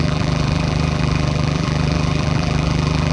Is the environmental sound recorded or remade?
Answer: remade